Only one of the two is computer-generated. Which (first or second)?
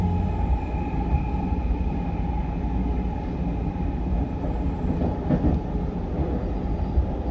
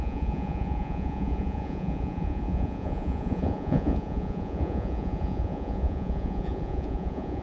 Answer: second